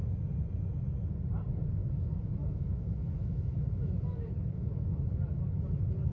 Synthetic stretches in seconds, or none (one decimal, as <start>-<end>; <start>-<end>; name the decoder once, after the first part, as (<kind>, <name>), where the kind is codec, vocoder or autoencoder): 1.8-5.1 (autoencoder, DAC-VAE)